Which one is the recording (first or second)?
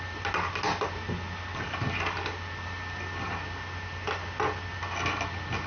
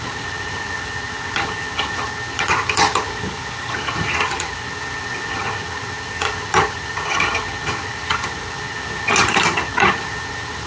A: first